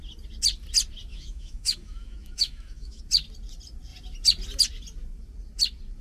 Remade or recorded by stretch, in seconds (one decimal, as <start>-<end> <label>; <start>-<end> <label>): 0.0-1.1 recorded; 1.1-3.0 remade; 3.0-6.0 recorded